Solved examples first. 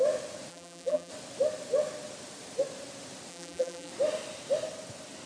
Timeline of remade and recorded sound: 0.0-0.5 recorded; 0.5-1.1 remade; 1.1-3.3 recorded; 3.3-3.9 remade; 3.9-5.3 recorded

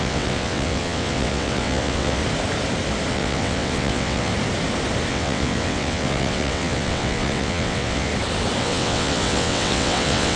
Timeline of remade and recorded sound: 0.0-2.2 remade; 2.2-3.1 recorded; 3.1-4.3 remade; 4.3-5.1 recorded; 5.1-8.1 remade; 8.1-8.6 recorded; 8.6-10.4 remade

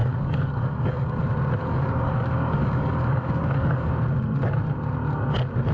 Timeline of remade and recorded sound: 0.0-1.2 remade; 1.2-1.6 recorded; 1.6-3.9 remade; 3.9-5.7 recorded

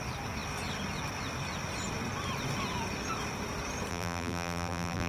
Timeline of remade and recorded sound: 0.0-3.9 recorded; 3.9-5.1 remade

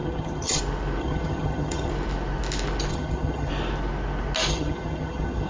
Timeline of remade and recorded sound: 0.0-0.6 remade; 0.6-1.0 recorded; 1.0-1.9 remade; 1.9-2.9 recorded; 2.9-3.5 remade; 3.5-4.5 recorded; 4.5-5.5 remade

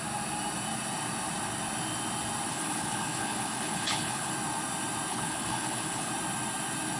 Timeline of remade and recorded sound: 0.0-2.5 recorded; 2.5-4.3 remade; 4.3-5.1 recorded; 5.1-6.1 remade; 6.1-7.0 recorded

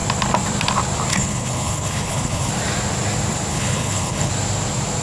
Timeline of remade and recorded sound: 0.0-1.1 recorded; 1.1-2.5 remade; 2.5-3.5 recorded; 3.5-4.3 remade; 4.3-5.0 recorded